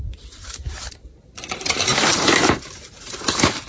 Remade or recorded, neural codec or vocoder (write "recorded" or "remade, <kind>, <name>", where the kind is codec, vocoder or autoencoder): remade, vocoder, BigVGAN v2